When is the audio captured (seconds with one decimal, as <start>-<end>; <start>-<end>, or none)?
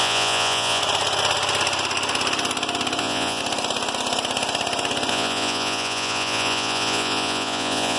0.8-3.0; 3.4-5.1